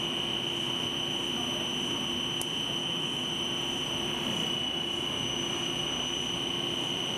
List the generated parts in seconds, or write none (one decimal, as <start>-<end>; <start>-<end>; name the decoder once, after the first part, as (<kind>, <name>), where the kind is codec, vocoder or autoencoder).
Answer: 2.8-3.3 (autoencoder, DAC-VAE)